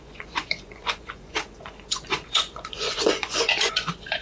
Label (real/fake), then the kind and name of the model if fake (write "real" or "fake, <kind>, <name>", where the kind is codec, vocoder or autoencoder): fake, vocoder, Vocos